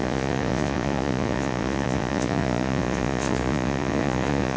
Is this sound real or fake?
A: fake